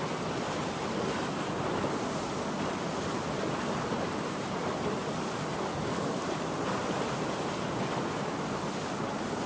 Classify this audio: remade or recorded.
recorded